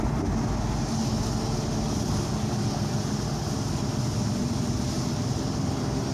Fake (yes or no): no